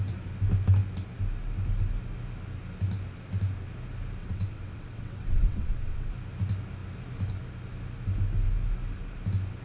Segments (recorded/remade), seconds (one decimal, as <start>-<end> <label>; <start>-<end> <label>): 0.0-4.2 recorded; 4.2-6.1 remade; 6.1-9.6 recorded